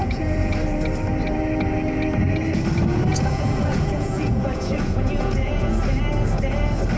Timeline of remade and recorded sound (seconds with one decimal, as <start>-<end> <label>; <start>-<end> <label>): 0.0-0.6 remade; 0.6-3.1 recorded; 3.1-5.7 remade; 5.7-7.0 recorded